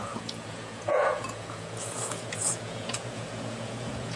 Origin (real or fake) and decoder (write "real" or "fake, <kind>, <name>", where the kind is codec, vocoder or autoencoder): fake, vocoder, Vocos